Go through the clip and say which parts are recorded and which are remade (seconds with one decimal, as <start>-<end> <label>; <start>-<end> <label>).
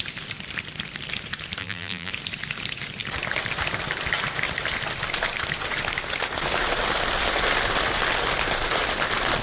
0.0-1.6 recorded; 1.6-2.1 remade; 2.1-9.4 recorded